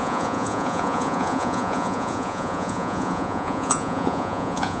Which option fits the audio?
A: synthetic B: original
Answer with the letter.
A